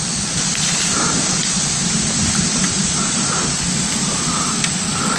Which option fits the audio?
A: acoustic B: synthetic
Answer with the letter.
A